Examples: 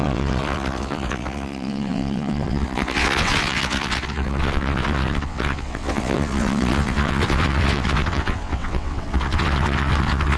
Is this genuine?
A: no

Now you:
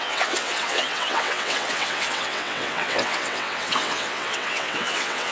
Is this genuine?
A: no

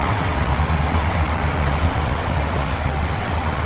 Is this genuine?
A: no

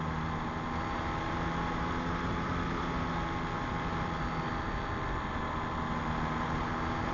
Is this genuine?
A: yes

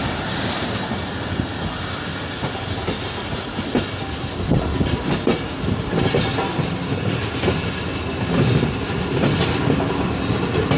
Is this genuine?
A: yes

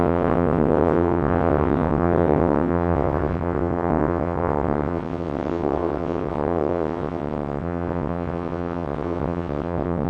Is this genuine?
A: no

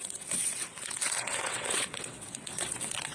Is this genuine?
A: no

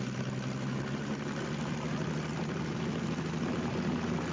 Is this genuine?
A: yes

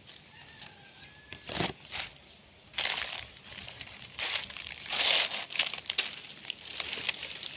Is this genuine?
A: yes